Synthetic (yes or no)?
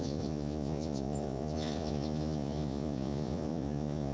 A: yes